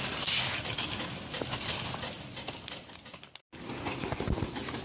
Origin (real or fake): real